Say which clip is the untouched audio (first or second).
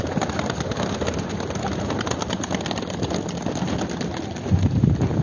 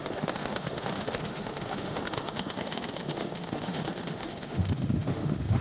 first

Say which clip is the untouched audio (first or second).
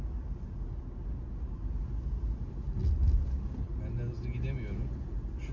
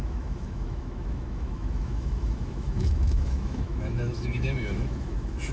first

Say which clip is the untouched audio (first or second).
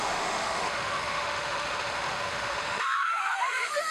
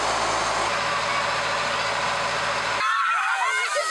second